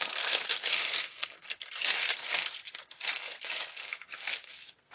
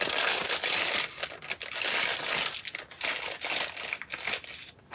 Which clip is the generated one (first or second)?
first